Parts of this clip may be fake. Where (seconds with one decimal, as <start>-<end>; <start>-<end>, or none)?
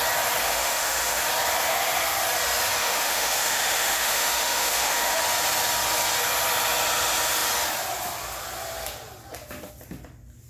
0.4-1.3; 2.8-5.2